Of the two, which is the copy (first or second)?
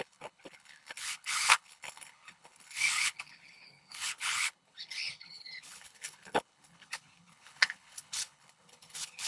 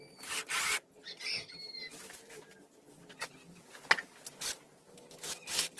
first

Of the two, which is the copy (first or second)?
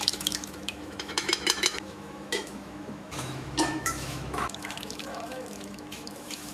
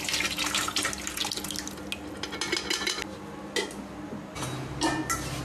first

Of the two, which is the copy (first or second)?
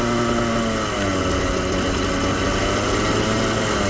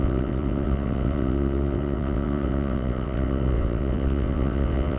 second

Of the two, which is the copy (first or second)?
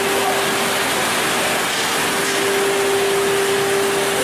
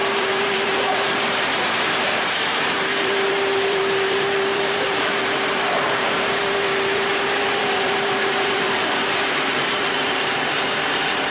second